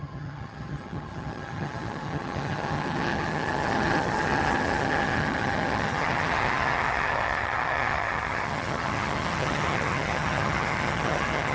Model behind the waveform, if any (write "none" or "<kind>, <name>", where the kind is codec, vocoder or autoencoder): vocoder, HiFi-GAN